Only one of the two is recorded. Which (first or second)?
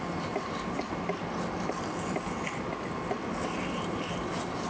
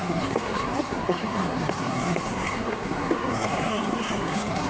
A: first